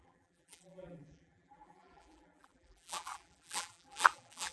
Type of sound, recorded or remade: remade